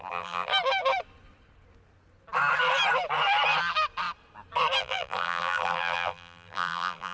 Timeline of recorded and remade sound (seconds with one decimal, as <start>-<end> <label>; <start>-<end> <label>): 0.0-0.5 remade; 0.5-4.8 recorded; 4.8-7.1 remade